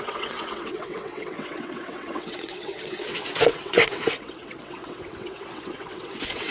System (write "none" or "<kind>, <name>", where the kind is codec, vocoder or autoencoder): vocoder, WaveNeXt